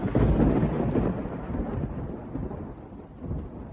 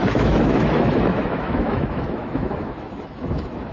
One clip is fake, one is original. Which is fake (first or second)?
second